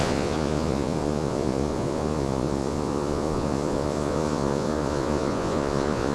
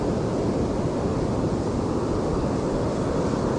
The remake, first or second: first